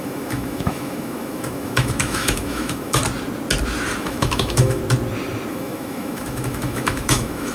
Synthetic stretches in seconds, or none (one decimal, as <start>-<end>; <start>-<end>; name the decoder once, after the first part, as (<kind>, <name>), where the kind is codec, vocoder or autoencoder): 0.0-3.0 (autoencoder, DAC-VAE); 4.0-4.8; 5.5-7.5